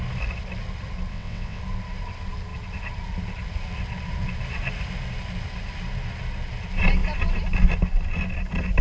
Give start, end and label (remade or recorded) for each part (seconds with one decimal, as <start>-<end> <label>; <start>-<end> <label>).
0.0-1.1 recorded; 1.1-1.6 remade; 1.6-8.8 recorded